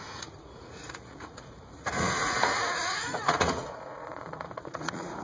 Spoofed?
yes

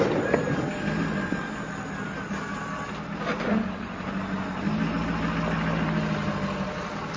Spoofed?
no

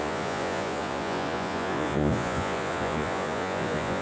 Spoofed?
yes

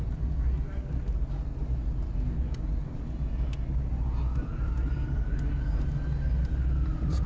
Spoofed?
no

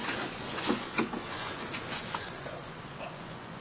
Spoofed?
yes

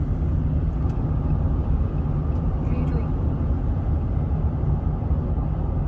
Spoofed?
no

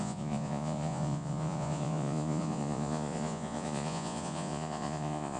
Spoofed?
yes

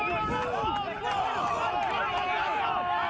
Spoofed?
no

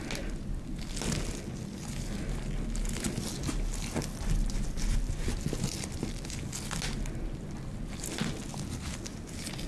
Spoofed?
no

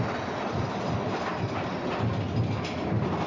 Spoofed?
no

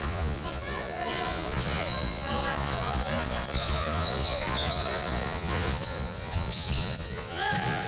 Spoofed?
yes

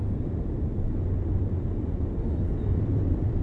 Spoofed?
no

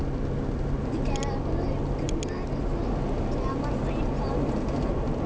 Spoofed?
no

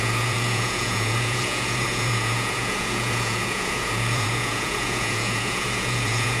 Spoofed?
yes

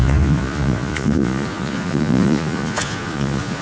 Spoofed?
yes